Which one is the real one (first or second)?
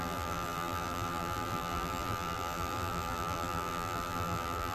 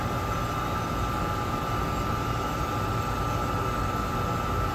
second